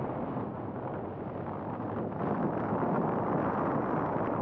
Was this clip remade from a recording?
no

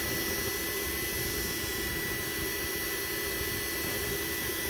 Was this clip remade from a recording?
no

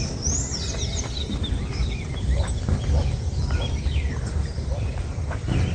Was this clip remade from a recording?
yes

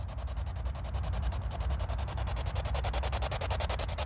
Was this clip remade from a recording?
no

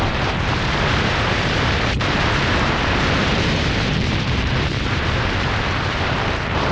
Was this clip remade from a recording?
yes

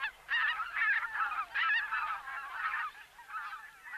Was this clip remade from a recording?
no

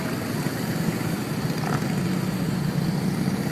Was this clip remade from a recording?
no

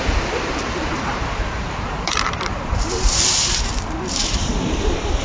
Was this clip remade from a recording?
yes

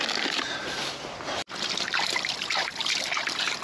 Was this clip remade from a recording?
yes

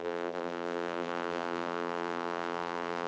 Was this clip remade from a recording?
yes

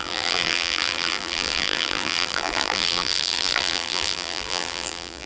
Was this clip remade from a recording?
yes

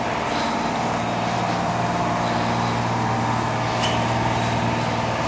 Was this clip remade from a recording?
no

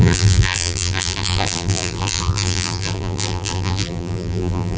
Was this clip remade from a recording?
yes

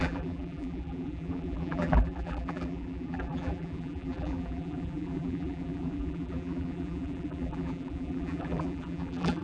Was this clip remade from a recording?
yes